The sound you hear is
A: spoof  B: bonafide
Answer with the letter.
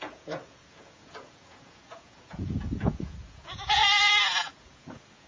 A